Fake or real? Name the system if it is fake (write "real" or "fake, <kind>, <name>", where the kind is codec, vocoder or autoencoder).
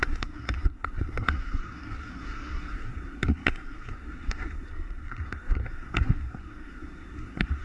fake, codec, SNAC